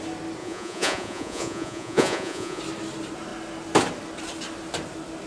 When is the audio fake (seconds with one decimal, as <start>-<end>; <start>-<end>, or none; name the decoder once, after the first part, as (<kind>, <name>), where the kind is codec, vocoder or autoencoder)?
0.4-2.6 (vocoder, Vocos)